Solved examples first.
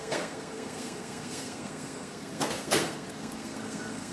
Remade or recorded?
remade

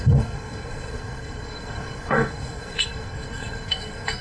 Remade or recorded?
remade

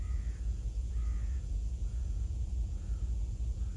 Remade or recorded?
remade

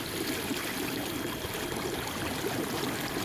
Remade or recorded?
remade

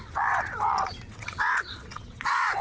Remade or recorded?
remade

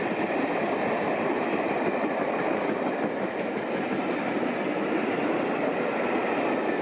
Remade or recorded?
recorded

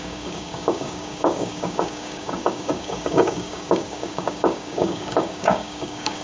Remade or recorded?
remade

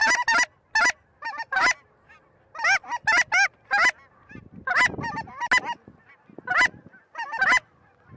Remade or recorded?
recorded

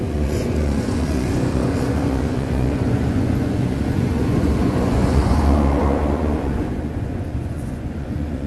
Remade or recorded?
remade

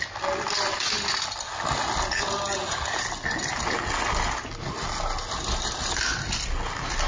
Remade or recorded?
recorded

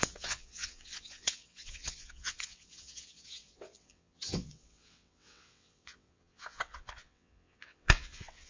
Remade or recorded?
remade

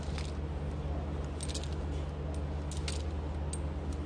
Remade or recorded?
recorded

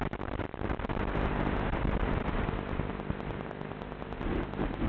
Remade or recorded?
recorded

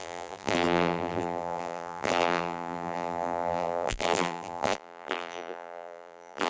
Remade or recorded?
remade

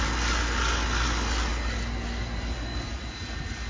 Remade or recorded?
recorded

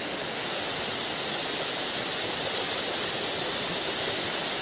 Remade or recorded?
recorded